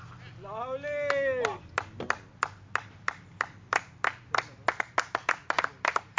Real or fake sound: real